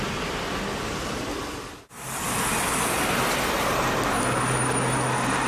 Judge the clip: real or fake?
real